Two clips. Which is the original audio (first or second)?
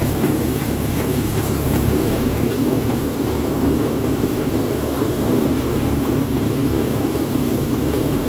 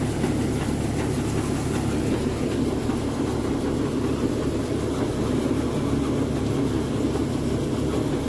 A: second